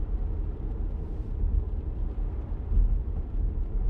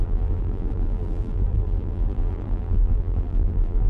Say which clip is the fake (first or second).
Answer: second